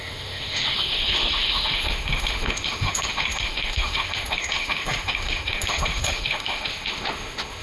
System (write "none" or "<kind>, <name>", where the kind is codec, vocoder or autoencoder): autoencoder, DAC-VAE